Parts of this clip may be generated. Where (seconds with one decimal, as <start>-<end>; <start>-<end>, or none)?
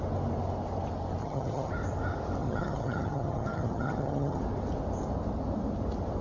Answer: 1.2-1.7; 2.4-4.4